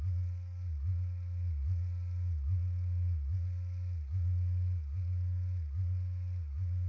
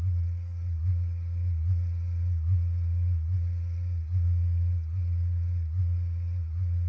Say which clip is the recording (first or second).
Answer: first